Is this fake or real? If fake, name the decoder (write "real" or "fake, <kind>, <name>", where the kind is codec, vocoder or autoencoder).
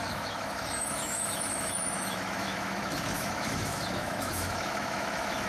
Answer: fake, autoencoder, DAC-VAE